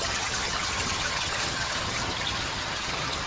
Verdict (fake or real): fake